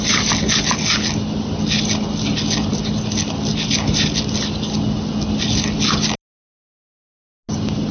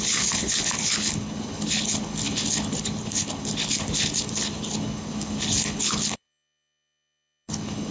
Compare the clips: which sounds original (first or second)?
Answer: first